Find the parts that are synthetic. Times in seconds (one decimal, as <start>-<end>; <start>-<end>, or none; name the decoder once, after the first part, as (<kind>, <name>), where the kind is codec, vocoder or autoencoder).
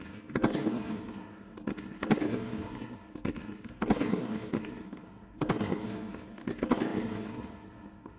0.0-8.2 (codec, SNAC)